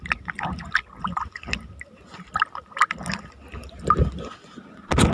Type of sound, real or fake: real